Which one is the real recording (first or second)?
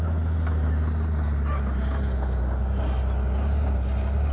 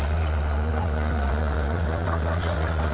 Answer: first